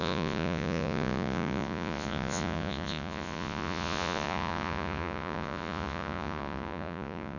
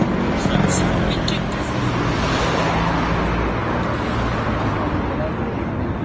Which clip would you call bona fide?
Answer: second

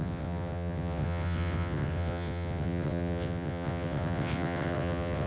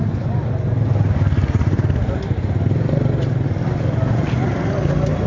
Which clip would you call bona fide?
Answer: second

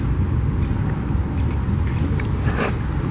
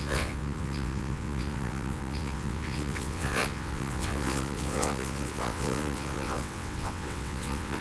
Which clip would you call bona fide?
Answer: first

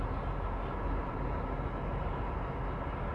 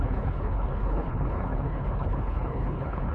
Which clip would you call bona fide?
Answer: first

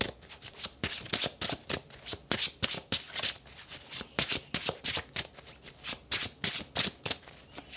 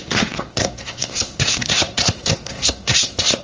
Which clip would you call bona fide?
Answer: first